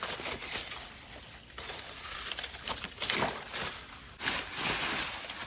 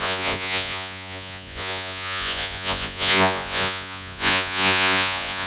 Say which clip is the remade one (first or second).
second